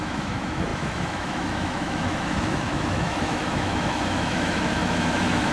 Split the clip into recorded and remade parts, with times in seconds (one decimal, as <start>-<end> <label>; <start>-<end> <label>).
0.0-5.5 remade